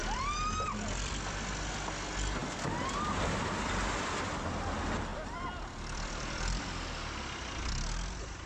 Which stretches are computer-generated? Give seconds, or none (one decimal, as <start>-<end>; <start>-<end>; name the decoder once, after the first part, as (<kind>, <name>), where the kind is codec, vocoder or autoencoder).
0.0-1.7 (vocoder, BigVGAN v2); 5.1-6.6